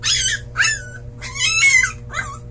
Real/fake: real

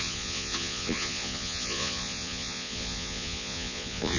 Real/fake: fake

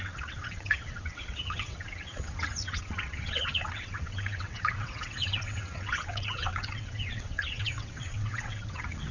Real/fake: fake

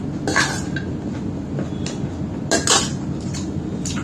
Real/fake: real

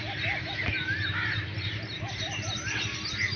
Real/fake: real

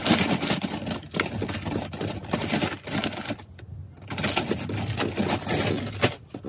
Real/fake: real